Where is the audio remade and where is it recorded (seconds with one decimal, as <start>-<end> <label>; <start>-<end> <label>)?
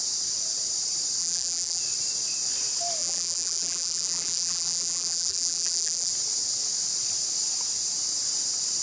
0.0-1.2 recorded; 1.2-1.8 remade; 1.8-3.0 recorded; 3.0-6.1 remade; 6.1-8.8 recorded